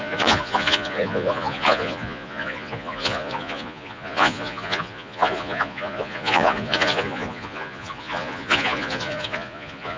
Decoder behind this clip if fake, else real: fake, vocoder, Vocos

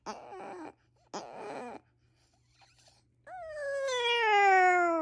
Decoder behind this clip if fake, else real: real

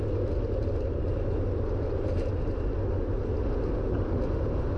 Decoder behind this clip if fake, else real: real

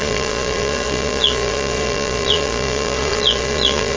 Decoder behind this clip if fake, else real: fake, vocoder, Vocos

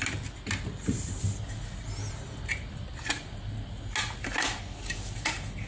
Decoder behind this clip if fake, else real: real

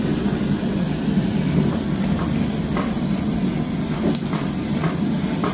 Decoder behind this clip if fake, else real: real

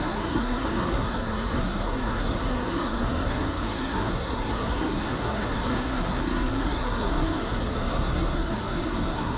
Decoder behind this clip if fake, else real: fake, codec, SNAC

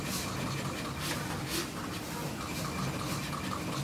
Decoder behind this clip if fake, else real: real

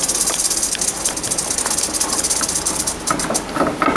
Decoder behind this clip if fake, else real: real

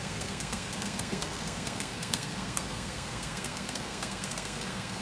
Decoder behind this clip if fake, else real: fake, codec, SNAC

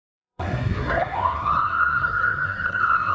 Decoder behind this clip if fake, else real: fake, codec, SNAC